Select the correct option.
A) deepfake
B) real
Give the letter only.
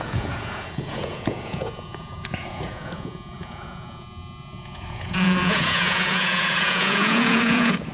A